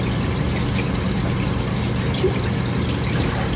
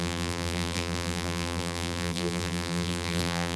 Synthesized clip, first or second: second